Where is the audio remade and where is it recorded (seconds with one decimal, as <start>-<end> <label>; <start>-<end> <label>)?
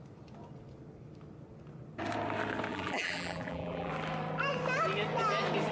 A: 0.0-2.7 recorded; 2.7-3.9 remade; 3.9-5.7 recorded